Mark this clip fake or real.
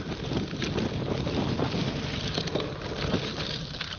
real